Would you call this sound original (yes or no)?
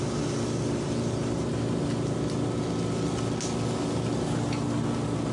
yes